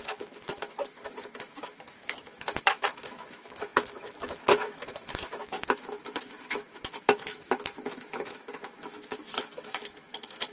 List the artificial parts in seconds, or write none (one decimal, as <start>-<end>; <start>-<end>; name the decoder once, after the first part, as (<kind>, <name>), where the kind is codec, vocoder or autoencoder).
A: 0.0-10.5 (autoencoder, DAC-VAE)